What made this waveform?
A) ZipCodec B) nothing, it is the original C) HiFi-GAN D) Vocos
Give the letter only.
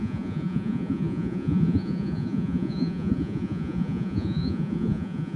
D